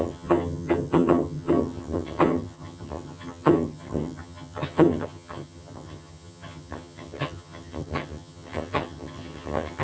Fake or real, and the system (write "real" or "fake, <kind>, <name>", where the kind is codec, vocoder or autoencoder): fake, vocoder, HiFi-GAN